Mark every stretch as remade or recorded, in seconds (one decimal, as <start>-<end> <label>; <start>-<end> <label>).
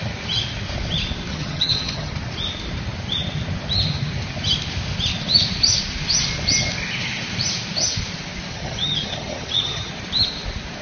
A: 0.0-1.3 recorded; 1.3-2.1 remade; 2.1-8.5 recorded; 8.5-9.9 remade; 9.9-10.8 recorded